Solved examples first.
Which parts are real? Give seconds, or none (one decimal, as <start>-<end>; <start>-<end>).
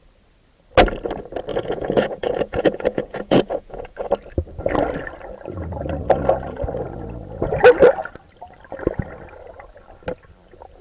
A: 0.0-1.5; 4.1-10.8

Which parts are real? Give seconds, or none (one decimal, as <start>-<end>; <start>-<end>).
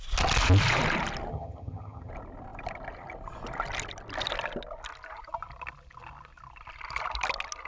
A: 0.0-1.3; 2.1-7.7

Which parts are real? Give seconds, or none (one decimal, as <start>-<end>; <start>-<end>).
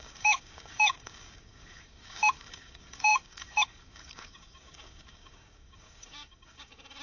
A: none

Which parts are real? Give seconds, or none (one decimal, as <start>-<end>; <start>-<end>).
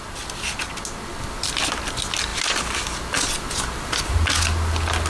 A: 0.0-5.1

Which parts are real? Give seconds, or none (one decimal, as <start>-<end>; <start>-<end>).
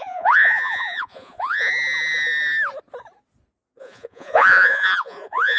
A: 1.7-3.8